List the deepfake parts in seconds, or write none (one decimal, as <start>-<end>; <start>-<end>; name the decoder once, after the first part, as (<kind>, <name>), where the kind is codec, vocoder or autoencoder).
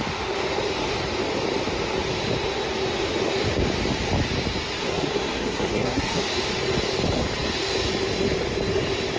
4.8-6.2 (codec, SNAC)